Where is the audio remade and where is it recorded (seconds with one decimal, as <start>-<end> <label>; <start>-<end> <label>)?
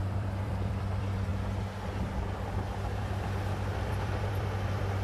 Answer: 0.0-5.0 remade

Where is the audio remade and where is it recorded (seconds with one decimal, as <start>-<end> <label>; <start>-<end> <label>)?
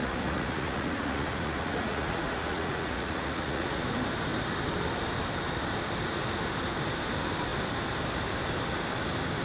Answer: 0.0-3.8 remade; 3.8-9.4 recorded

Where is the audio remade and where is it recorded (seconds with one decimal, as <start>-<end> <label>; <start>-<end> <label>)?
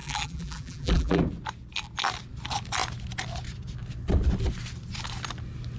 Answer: 0.0-1.2 remade; 1.2-5.8 recorded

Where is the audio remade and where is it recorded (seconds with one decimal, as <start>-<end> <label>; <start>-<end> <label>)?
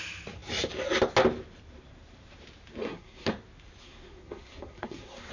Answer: 0.0-2.8 recorded; 2.8-3.3 remade; 3.3-3.8 recorded; 3.8-5.3 remade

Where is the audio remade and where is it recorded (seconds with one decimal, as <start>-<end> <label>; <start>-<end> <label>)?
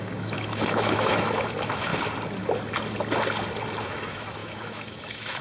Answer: 0.0-1.9 remade; 1.9-3.8 recorded; 3.8-5.4 remade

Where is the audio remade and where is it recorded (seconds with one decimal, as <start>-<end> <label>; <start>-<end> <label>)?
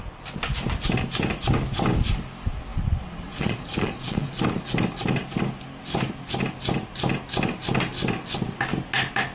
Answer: 0.0-2.7 recorded; 2.7-4.4 remade; 4.4-9.3 recorded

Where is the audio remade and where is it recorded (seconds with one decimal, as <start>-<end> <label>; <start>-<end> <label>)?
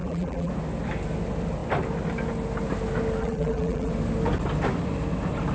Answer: 0.0-0.5 remade; 0.5-3.2 recorded; 3.2-3.9 remade; 3.9-5.5 recorded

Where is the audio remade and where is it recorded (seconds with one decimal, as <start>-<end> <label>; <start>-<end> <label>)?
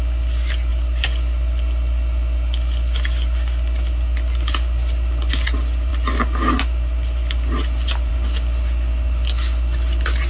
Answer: 0.0-10.3 recorded